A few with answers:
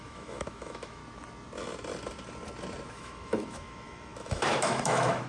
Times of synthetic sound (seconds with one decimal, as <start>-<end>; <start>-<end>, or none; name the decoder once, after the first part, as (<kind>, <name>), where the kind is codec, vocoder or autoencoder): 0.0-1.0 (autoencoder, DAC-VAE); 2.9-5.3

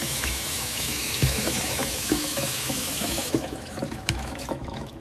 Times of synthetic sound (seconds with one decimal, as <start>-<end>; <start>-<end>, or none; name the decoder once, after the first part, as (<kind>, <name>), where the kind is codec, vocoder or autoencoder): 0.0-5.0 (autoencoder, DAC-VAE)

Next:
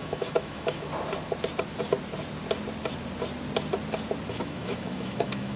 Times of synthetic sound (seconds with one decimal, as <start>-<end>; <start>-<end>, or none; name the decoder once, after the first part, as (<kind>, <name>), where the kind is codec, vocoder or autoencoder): 0.0-0.9 (autoencoder, DAC-VAE); 4.3-5.6

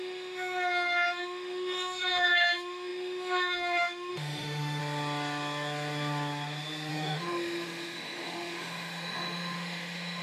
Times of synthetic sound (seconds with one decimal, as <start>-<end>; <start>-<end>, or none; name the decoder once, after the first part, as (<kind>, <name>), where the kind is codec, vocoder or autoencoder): 0.0-4.8 (autoencoder, DAC-VAE); 6.9-10.2

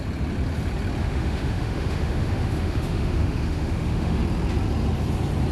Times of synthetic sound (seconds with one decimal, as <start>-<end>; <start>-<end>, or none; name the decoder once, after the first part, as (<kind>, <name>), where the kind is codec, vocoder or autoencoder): 1.0-4.2 (autoencoder, DAC-VAE)

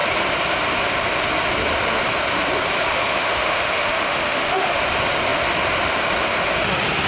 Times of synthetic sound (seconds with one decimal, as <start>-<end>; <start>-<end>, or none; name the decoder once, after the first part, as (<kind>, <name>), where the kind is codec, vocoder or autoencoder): 2.9-4.8 (autoencoder, DAC-VAE)

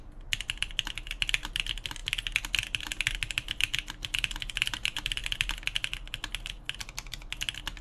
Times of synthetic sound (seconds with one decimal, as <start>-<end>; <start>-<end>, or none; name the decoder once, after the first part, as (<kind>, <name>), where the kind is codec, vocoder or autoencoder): none